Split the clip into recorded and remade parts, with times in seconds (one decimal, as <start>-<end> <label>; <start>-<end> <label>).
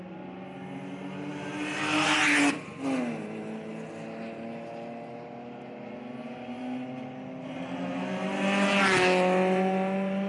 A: 0.0-10.3 recorded